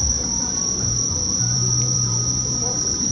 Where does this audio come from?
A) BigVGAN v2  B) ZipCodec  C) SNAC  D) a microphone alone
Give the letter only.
A